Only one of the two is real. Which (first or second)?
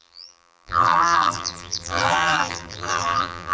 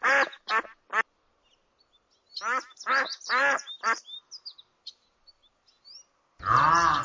second